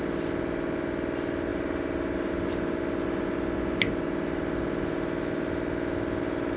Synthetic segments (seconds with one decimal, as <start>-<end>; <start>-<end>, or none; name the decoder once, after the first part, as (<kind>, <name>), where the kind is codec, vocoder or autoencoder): none